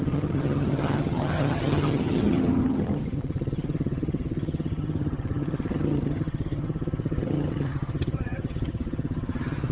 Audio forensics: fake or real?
fake